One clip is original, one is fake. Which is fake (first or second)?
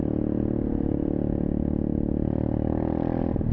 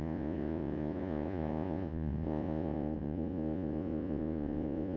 second